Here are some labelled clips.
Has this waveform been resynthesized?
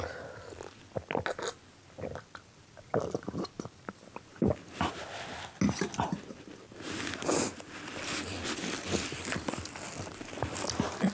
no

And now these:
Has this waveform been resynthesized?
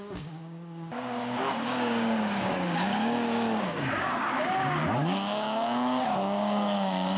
yes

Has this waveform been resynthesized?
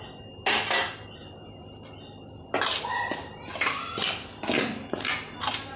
no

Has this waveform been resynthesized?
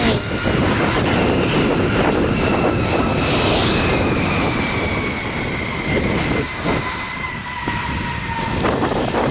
no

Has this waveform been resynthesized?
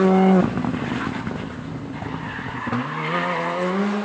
no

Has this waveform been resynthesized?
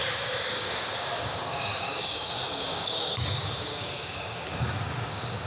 yes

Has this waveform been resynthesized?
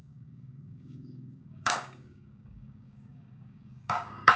yes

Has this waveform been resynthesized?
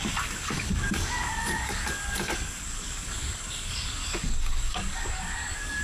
yes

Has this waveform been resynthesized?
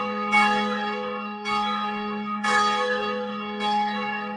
yes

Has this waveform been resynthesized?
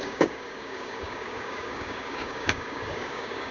yes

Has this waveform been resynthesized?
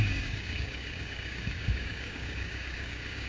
yes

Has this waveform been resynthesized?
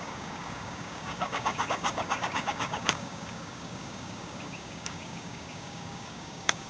yes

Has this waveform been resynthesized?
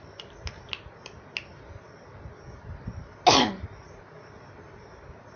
no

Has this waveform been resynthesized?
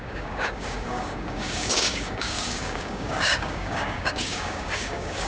yes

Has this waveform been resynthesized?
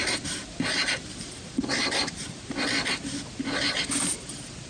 no